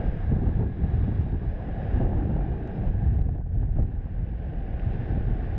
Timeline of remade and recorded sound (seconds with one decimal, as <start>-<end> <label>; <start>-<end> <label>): 0.0-5.6 recorded